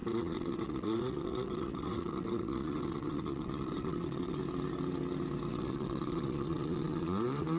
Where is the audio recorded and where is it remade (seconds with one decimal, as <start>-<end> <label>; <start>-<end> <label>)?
0.0-4.4 remade; 4.4-5.5 recorded; 5.5-7.6 remade